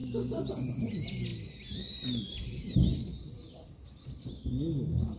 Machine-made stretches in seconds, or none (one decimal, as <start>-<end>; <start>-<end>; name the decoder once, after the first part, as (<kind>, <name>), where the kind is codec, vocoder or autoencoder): none